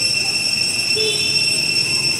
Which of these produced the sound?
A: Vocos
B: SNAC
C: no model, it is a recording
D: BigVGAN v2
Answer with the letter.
C